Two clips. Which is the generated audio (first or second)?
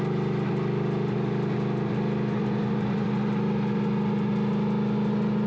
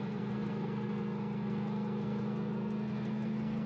second